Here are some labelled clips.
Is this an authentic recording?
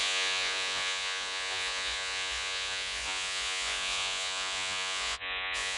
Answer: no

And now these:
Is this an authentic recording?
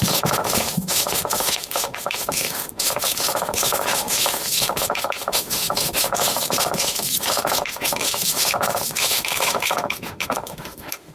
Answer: no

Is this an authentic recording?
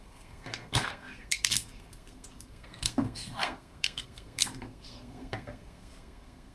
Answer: no